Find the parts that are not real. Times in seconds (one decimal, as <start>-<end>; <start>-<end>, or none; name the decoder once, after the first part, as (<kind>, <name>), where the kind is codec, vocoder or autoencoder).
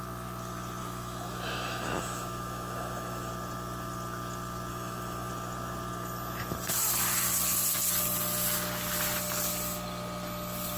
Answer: 0.8-3.3 (autoencoder, DAC-VAE); 4.7-5.3